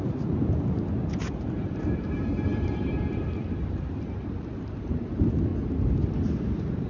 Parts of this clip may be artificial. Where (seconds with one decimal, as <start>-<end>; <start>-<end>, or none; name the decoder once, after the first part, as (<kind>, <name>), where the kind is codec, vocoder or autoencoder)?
0.0-5.5 (vocoder, BigVGAN v2); 6.3-6.9